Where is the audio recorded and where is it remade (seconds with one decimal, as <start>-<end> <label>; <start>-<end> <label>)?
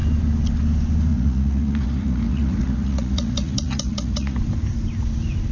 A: 0.0-1.1 recorded; 1.1-4.4 remade; 4.4-5.5 recorded